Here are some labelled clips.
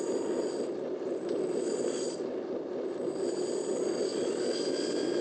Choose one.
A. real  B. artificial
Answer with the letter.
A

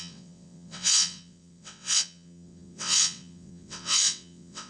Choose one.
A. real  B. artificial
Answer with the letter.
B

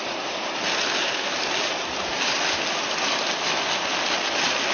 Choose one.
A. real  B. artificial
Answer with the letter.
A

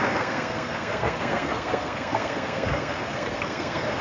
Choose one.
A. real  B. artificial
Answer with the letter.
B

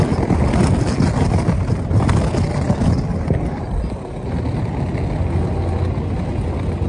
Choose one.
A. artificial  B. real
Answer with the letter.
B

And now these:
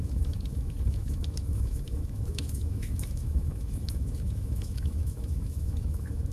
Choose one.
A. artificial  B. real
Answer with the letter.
A